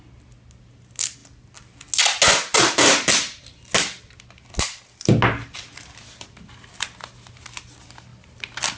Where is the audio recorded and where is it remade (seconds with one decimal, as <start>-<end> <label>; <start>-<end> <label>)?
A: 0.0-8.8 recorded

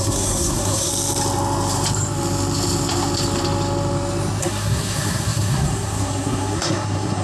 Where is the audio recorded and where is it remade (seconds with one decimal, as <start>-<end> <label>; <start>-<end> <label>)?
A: 0.0-0.9 remade; 0.9-4.4 recorded; 4.4-7.2 remade

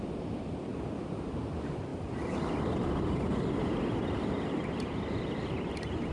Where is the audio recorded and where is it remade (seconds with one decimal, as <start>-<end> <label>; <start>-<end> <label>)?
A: 0.0-6.1 recorded

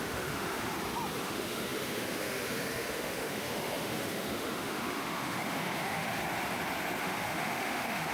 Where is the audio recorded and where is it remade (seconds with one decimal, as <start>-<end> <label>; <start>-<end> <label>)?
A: 0.0-0.7 remade; 0.7-1.2 recorded; 1.2-6.2 remade; 6.2-7.0 recorded; 7.0-8.1 remade